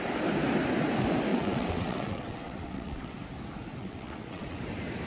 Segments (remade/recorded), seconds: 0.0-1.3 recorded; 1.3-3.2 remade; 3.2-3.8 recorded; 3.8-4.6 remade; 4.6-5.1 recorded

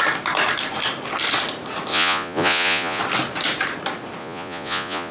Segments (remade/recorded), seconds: 0.0-1.9 recorded; 1.9-3.0 remade; 3.0-4.2 recorded; 4.2-5.1 remade

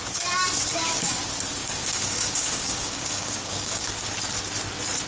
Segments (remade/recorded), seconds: 0.0-0.7 recorded; 0.7-1.2 remade; 1.2-1.6 recorded; 1.6-3.9 remade; 3.9-5.1 recorded

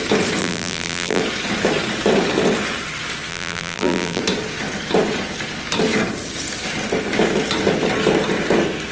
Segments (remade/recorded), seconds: 0.0-0.4 recorded; 0.4-1.2 remade; 1.2-3.3 recorded; 3.3-4.2 remade; 4.2-8.9 recorded